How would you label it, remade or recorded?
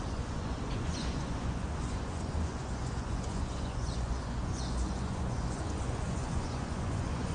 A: remade